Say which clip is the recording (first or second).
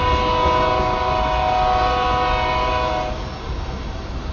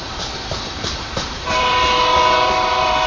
first